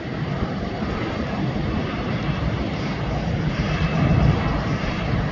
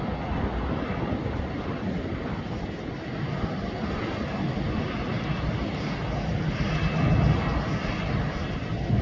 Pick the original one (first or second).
second